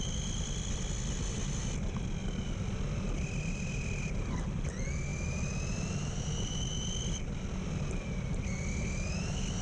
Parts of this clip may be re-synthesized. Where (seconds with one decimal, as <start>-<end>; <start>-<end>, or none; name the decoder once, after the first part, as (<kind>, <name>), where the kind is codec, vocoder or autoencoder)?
none